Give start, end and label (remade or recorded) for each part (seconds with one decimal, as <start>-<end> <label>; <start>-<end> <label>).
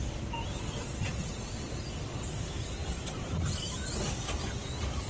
0.0-5.1 recorded